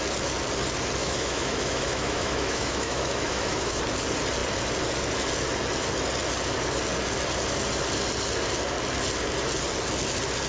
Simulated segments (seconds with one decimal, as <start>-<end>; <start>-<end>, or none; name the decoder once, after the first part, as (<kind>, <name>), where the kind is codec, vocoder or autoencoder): 1.0-3.8 (autoencoder, DAC-VAE)